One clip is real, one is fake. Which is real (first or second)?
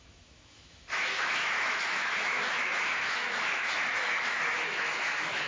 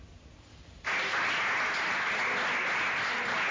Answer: second